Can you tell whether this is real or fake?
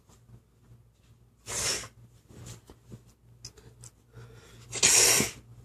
real